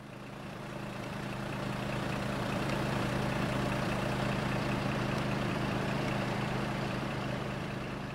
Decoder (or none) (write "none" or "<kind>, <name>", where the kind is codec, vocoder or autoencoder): vocoder, BigVGAN v2